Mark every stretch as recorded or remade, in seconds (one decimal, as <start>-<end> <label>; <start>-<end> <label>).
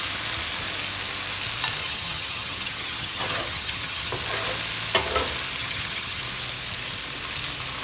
0.0-1.8 recorded; 1.8-4.1 remade; 4.1-5.6 recorded; 5.6-6.2 remade; 6.2-7.8 recorded